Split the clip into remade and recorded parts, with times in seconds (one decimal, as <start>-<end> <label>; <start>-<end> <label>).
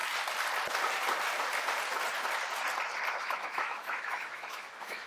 0.0-3.1 recorded; 3.1-5.1 remade